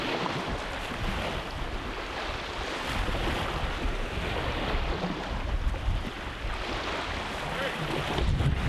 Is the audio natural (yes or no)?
yes